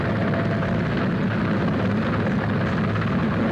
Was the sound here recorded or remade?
recorded